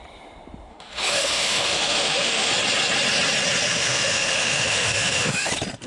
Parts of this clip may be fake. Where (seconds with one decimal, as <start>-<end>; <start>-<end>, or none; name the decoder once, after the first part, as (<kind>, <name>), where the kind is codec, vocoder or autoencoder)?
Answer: 0.7-2.5 (autoencoder, DAC-VAE); 3.7-5.5